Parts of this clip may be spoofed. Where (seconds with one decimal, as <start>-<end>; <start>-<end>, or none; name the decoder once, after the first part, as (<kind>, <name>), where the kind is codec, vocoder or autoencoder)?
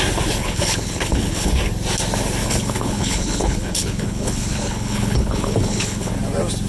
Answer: 0.4-1.5 (codec, HILCodec); 2.4-6.1